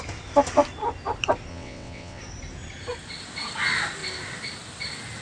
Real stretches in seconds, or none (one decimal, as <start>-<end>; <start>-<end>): 0.0-1.5; 2.2-5.2